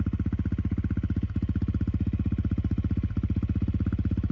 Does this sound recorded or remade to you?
recorded